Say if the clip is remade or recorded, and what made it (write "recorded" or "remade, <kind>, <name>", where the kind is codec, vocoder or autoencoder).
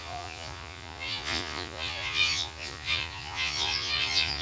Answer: remade, vocoder, Vocos